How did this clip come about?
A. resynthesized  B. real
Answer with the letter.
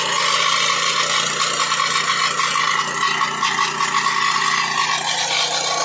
B